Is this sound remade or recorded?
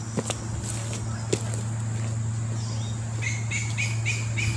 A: recorded